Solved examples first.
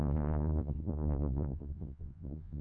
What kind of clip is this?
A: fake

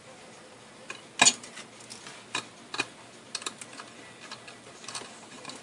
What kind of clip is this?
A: real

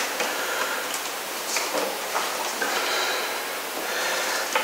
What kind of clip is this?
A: real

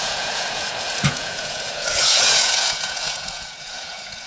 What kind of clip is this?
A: fake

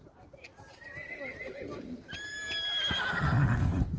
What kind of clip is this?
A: real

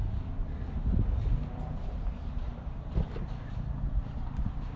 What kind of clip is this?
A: real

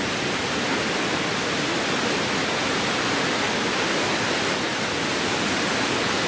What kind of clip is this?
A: real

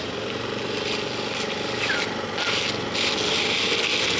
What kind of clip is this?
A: real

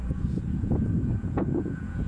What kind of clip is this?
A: fake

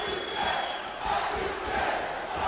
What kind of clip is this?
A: real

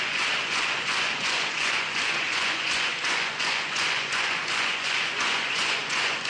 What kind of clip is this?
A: fake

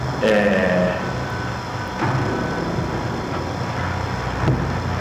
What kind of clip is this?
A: real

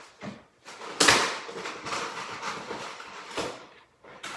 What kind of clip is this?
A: real